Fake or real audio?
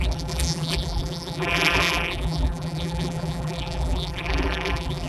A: fake